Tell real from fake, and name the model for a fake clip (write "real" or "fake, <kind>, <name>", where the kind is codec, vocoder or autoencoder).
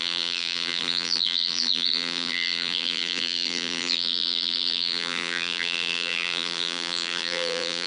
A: fake, vocoder, BigVGAN v2